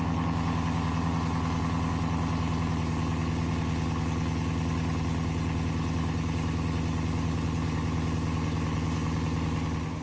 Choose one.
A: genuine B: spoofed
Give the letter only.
A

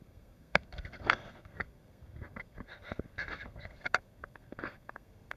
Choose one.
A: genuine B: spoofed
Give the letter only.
B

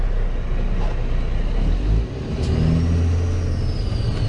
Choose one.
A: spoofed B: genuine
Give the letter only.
B